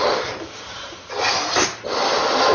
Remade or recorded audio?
recorded